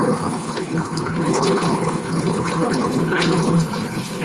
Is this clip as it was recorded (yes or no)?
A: no